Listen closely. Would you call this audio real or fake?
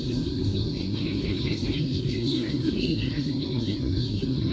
fake